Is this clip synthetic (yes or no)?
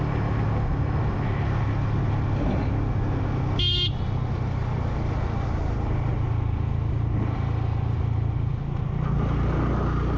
no